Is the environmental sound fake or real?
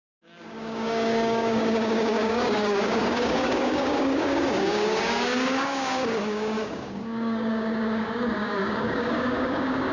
fake